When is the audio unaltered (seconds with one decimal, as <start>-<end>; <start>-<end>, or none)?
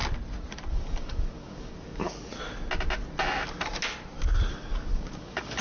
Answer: 0.0-0.7; 2.3-4.5